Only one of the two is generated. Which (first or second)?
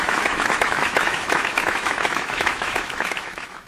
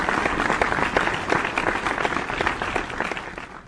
first